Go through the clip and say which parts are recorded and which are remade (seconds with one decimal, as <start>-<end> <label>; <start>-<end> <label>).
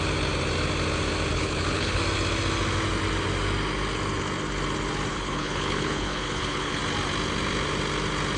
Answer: 0.0-1.3 recorded; 1.3-2.0 remade; 2.0-5.1 recorded; 5.1-6.8 remade; 6.8-8.4 recorded